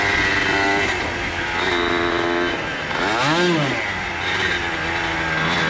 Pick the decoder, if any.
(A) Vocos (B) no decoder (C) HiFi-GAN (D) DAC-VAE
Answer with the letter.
B